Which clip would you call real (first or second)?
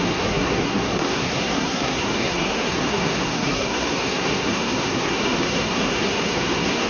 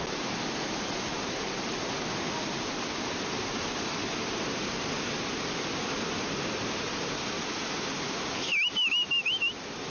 second